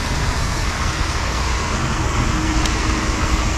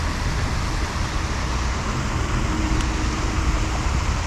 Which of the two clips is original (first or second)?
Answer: second